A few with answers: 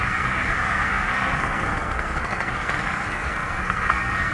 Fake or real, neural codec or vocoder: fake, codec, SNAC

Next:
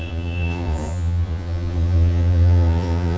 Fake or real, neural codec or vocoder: fake, vocoder, Vocos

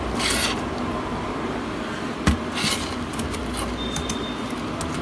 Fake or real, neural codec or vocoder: real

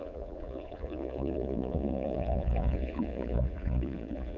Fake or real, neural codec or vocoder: fake, vocoder, Vocos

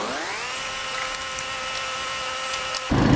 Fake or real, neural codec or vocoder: real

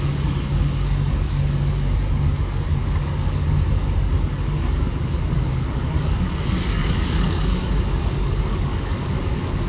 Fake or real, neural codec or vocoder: fake, codec, DAC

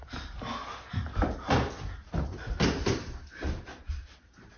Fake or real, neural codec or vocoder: real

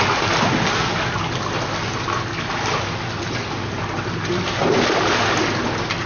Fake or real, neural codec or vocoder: real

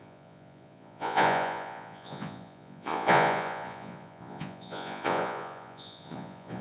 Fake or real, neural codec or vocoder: fake, vocoder, Vocos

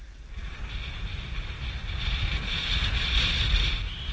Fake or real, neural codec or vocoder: real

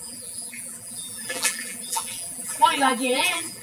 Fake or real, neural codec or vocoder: fake, vocoder, BigVGAN v2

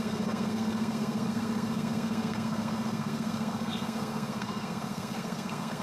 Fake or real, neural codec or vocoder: fake, codec, SNAC